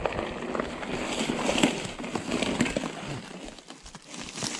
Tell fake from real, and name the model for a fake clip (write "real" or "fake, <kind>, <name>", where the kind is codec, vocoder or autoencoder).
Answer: real